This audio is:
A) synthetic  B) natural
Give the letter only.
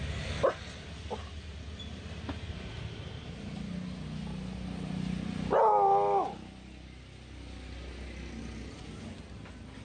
B